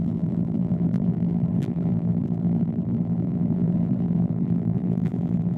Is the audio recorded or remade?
remade